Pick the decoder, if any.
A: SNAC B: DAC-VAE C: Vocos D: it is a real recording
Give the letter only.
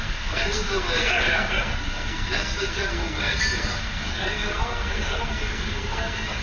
A